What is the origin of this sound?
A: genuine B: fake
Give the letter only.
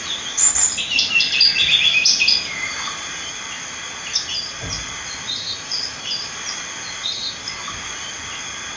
A